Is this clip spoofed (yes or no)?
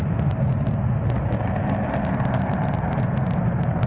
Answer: no